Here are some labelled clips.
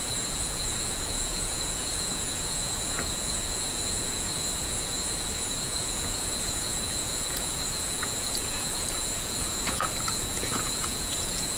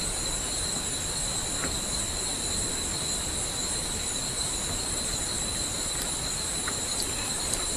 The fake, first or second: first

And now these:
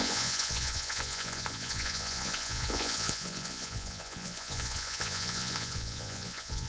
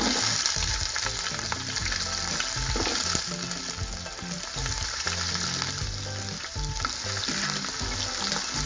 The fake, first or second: first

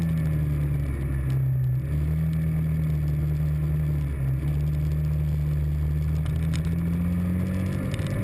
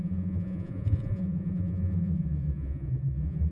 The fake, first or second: second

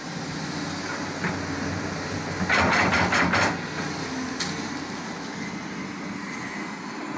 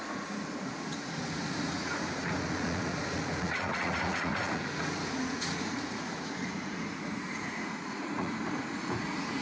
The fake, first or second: second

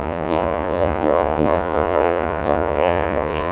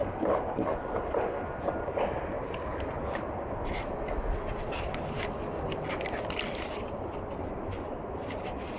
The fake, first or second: first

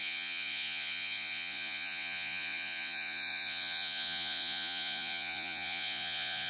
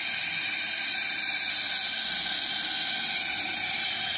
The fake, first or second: first